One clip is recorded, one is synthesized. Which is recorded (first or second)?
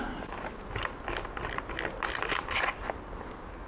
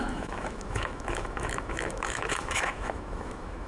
first